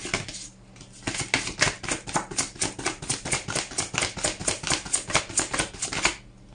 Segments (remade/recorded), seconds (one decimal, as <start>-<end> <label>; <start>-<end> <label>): 0.0-6.5 recorded